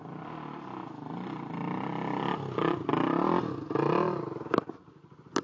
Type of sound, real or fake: real